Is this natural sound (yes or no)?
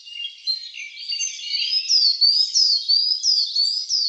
yes